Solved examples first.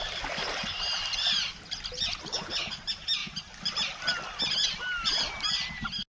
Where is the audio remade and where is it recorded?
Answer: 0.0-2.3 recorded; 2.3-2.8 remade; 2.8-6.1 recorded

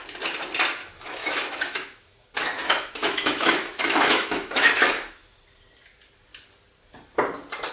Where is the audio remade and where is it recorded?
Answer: 0.0-0.8 recorded; 0.8-5.4 remade; 5.4-7.7 recorded

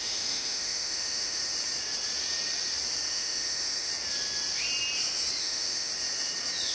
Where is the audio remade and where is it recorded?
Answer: 0.0-1.4 remade; 1.4-3.1 recorded; 3.1-3.9 remade; 3.9-5.4 recorded; 5.4-5.9 remade; 5.9-6.7 recorded